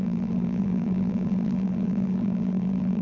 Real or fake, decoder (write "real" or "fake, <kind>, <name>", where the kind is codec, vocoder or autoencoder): fake, vocoder, BigVGAN v2